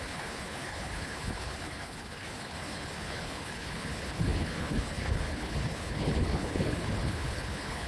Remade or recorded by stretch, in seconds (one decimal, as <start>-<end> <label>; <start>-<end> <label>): 0.0-7.9 remade